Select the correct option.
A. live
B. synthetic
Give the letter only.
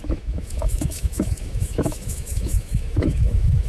B